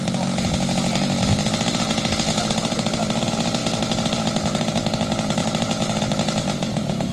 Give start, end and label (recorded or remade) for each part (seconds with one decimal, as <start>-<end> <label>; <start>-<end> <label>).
0.0-5.4 recorded; 5.4-6.0 remade; 6.0-7.1 recorded